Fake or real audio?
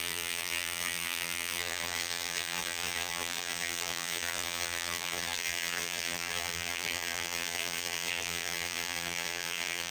fake